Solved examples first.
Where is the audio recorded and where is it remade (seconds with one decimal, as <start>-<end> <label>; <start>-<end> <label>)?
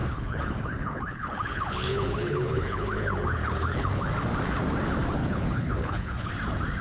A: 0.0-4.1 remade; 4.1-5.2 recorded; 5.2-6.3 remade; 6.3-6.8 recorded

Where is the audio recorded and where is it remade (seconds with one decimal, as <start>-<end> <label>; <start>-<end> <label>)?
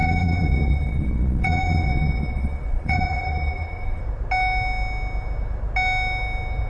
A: 0.0-4.0 remade; 4.0-6.7 recorded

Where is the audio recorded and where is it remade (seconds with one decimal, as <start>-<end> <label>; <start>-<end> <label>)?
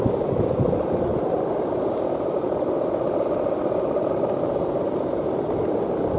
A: 0.0-6.2 recorded